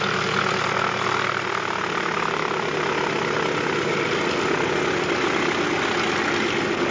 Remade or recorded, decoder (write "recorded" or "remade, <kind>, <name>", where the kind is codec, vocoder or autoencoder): recorded